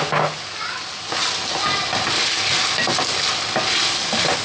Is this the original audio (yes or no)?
yes